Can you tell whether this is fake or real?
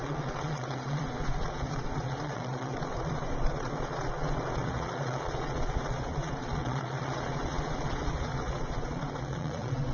fake